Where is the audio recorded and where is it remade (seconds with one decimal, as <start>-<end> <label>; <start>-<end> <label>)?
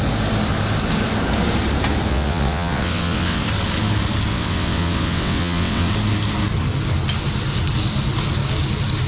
0.0-2.1 recorded; 2.1-3.4 remade; 3.4-4.3 recorded; 4.3-5.9 remade; 5.9-9.1 recorded